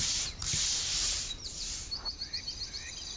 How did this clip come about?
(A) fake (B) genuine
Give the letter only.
A